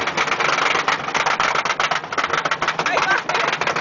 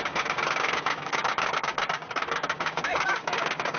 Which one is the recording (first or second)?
first